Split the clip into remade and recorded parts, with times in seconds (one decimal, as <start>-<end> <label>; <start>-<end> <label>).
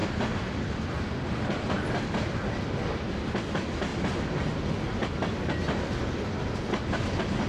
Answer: 0.0-7.5 recorded